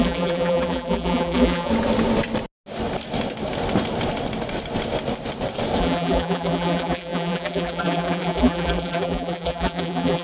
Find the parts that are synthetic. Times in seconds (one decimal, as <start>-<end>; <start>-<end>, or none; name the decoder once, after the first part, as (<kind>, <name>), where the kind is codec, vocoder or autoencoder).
0.0-1.7 (vocoder, BigVGAN v2); 5.8-10.2

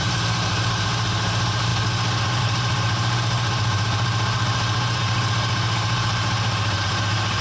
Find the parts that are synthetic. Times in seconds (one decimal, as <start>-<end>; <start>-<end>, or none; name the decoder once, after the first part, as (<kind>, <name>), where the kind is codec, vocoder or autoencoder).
0.0-1.7 (vocoder, BigVGAN v2); 2.4-7.4